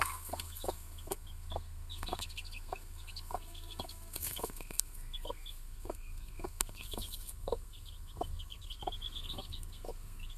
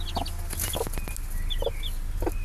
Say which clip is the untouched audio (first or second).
second